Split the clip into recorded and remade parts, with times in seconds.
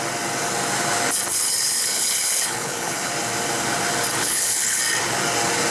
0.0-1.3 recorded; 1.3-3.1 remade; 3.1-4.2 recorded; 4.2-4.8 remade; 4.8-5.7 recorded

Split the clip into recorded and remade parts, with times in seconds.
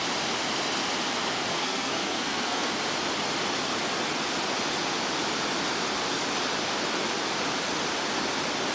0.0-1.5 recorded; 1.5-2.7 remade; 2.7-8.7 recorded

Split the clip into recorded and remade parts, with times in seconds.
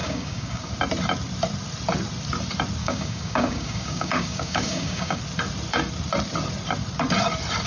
0.0-0.7 remade; 0.7-2.8 recorded; 2.8-5.2 remade; 5.2-7.7 recorded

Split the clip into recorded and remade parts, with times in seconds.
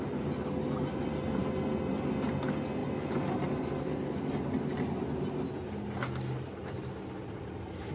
0.0-2.8 recorded; 2.8-3.8 remade; 3.8-7.9 recorded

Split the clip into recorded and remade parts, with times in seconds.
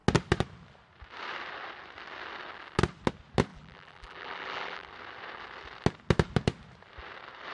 0.0-3.5 recorded; 3.5-4.9 remade; 4.9-7.5 recorded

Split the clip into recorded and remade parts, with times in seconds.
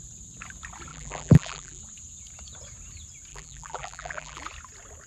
0.0-0.9 recorded; 0.9-1.8 remade; 1.8-3.3 recorded; 3.3-4.4 remade; 4.4-5.1 recorded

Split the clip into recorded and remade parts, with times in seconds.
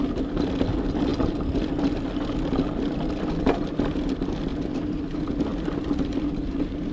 0.0-6.9 recorded